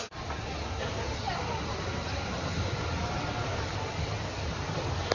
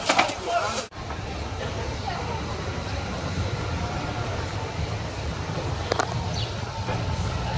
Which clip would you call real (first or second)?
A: first